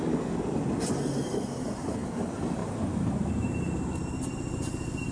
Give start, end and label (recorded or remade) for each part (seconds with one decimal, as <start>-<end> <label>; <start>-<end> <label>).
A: 0.0-1.3 recorded; 1.3-1.9 remade; 1.9-2.6 recorded; 2.6-3.3 remade; 3.3-5.1 recorded